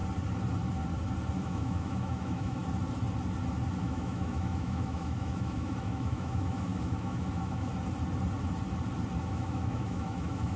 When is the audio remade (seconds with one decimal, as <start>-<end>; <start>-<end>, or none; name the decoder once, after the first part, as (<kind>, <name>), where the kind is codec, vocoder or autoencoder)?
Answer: 1.4-2.6 (autoencoder, DAC-VAE); 3.8-7.7; 9.2-10.6